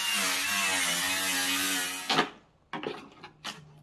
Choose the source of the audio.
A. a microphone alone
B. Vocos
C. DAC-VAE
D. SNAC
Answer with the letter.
A